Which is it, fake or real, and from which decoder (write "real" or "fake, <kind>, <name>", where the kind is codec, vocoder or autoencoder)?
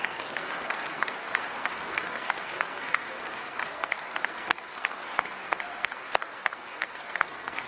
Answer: fake, codec, SNAC